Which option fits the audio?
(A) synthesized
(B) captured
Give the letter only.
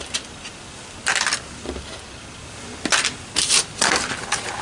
B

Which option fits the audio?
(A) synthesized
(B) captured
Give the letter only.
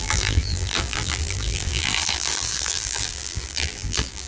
A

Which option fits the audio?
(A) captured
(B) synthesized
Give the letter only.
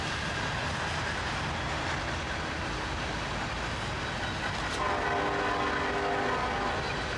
A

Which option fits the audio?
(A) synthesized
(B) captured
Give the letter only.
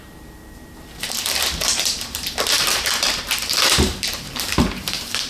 A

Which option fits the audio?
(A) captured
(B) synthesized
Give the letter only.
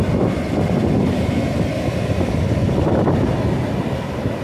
A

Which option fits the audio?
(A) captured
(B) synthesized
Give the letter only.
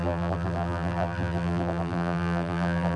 B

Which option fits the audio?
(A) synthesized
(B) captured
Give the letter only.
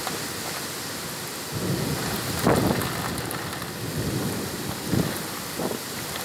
B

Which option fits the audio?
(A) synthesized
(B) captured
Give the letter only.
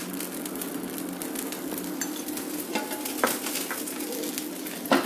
B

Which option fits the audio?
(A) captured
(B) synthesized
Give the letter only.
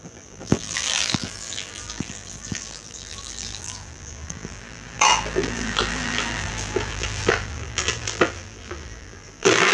B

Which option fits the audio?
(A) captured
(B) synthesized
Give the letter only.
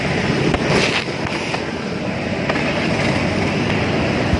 A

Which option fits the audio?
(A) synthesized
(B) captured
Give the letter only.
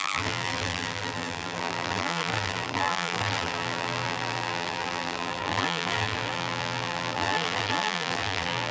A